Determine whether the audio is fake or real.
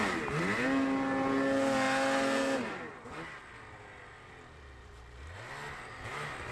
real